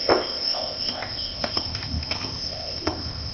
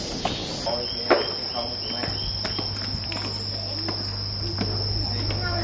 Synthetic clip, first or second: first